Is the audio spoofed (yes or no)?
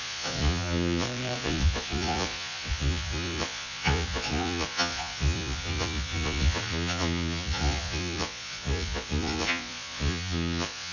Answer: yes